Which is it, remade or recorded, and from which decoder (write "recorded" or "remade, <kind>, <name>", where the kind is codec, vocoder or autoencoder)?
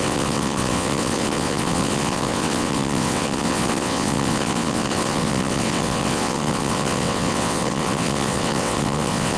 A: remade, vocoder, WaveNeXt